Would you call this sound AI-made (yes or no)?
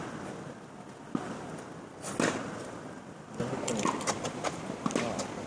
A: no